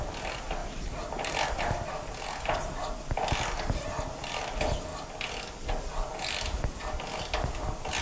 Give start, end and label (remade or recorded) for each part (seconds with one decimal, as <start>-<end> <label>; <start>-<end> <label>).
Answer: 0.0-8.0 recorded